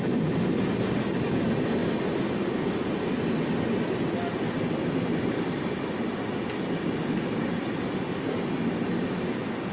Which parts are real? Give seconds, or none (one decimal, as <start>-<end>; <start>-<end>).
0.0-9.7